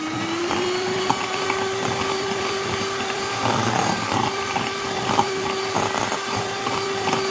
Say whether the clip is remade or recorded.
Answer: remade